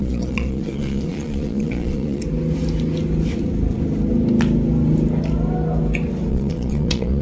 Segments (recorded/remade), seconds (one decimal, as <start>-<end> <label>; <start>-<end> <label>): 0.0-2.2 remade; 2.2-6.3 recorded; 6.3-7.2 remade